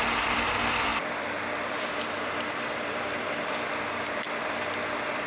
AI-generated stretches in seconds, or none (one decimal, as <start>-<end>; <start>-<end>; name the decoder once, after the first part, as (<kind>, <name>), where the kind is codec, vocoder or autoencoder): 0.0-5.3 (vocoder, BigVGAN v2)